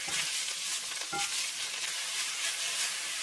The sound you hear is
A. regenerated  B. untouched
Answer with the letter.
B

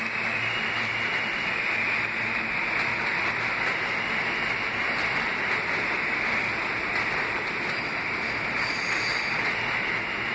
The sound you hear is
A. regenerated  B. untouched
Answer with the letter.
B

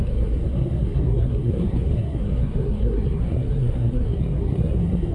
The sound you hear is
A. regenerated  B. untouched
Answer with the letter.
A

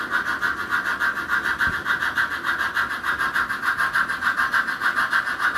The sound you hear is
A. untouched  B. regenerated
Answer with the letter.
A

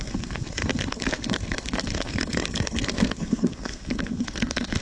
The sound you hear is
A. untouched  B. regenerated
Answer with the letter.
B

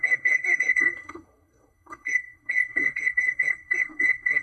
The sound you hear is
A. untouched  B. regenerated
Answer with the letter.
B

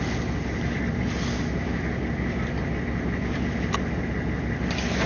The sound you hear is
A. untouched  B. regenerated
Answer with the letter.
A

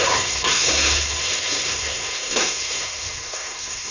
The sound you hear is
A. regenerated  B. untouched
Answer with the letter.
A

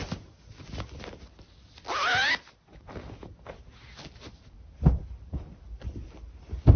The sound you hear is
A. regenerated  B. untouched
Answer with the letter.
B